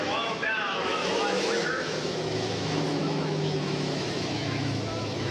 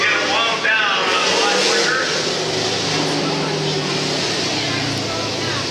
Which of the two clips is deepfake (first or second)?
first